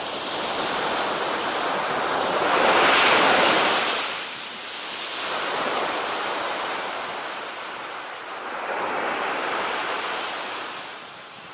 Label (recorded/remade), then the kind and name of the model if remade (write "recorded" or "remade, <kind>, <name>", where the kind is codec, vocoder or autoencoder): remade, vocoder, BigVGAN v2